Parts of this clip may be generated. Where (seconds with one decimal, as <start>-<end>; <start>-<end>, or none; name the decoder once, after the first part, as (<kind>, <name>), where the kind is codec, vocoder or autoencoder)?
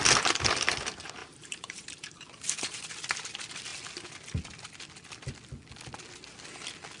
1.2-2.8 (vocoder, BigVGAN v2)